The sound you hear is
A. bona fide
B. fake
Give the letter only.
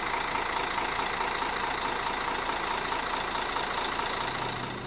A